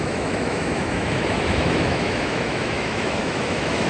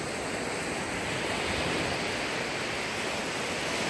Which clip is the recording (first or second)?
second